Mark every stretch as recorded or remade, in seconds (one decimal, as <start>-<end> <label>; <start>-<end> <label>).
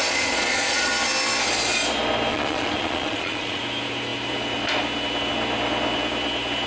0.0-0.9 remade; 0.9-2.3 recorded; 2.3-3.6 remade; 3.6-6.7 recorded